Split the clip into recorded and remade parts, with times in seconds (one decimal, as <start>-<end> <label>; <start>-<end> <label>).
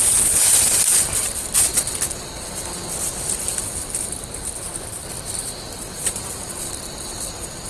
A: 0.0-1.7 remade; 1.7-4.9 recorded; 4.9-7.7 remade